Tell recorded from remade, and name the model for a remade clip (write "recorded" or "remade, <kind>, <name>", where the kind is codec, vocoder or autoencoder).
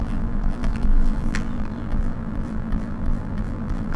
remade, vocoder, BigVGAN v2